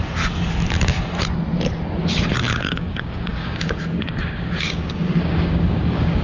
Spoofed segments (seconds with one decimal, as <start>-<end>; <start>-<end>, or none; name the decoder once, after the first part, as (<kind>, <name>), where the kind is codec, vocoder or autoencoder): 2.5-6.2 (codec, DAC)